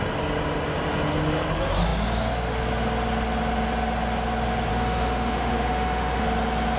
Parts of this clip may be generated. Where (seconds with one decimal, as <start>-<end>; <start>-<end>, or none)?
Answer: 4.7-6.2